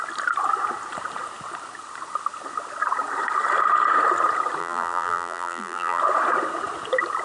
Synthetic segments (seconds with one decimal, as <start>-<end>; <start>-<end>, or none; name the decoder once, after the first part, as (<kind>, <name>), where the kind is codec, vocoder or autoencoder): 4.6-6.0 (vocoder, BigVGAN v2)